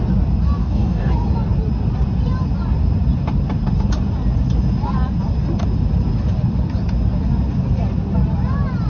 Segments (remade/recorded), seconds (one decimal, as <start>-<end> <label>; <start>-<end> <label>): 0.0-0.6 recorded; 0.6-1.1 remade; 1.1-8.9 recorded

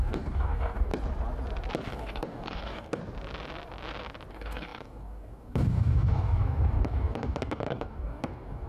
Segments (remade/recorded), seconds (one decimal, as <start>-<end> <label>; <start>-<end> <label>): 0.0-0.9 remade; 0.9-1.9 recorded; 1.9-3.0 remade; 3.0-4.3 recorded; 4.3-8.7 remade

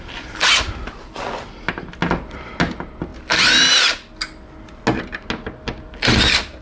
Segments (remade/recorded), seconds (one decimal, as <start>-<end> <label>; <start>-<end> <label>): 0.0-6.6 recorded

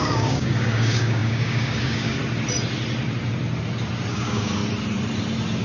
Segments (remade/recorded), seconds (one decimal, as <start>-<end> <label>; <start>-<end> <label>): 0.0-2.2 remade; 2.2-4.1 recorded; 4.1-4.6 remade; 4.6-5.6 recorded

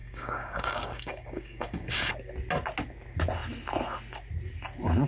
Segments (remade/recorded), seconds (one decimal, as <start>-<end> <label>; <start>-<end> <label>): 0.0-2.1 remade; 2.1-5.1 recorded

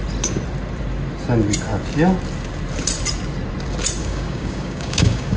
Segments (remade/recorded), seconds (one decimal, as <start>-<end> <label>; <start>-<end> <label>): 0.0-4.0 recorded; 4.0-5.4 remade